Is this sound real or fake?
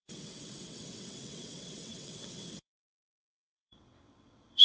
fake